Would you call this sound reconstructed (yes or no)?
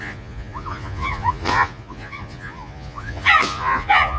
yes